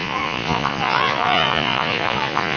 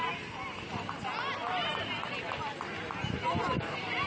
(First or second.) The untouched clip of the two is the second